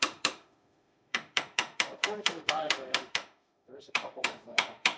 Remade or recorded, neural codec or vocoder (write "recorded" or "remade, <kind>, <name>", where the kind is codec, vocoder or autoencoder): remade, autoencoder, DAC-VAE